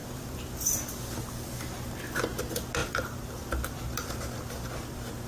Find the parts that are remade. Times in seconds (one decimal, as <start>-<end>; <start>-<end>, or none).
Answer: 0.0-0.9; 2.8-4.1